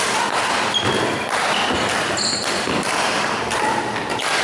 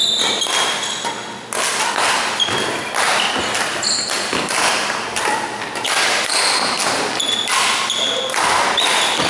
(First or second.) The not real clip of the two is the first